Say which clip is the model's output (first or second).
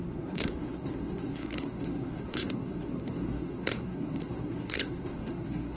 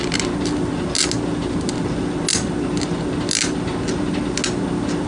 first